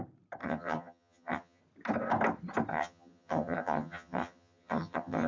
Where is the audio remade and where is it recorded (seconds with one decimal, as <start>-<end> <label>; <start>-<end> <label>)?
0.0-0.4 recorded; 0.4-1.6 remade; 1.6-2.7 recorded; 2.7-5.3 remade